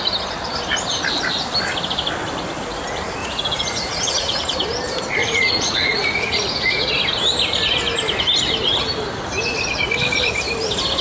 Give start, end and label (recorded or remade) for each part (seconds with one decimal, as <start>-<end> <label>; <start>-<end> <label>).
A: 0.0-3.2 recorded; 3.2-4.4 remade; 4.4-5.2 recorded; 5.2-6.9 remade; 6.9-11.0 recorded